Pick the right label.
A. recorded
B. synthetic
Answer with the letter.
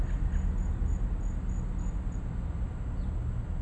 A